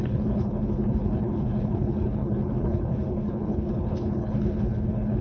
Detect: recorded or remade remade